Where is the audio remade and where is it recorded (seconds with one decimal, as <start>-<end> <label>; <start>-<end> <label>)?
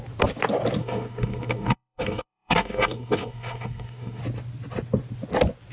0.0-0.8 recorded; 0.8-4.2 remade; 4.2-5.7 recorded